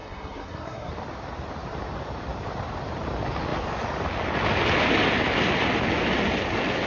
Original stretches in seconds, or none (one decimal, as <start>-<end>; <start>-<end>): 0.9-6.9